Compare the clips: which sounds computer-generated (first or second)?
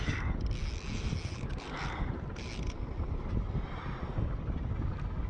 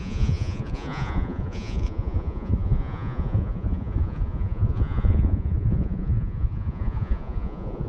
second